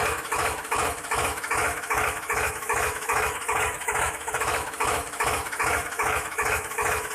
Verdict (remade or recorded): remade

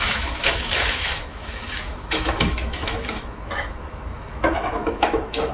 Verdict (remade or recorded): remade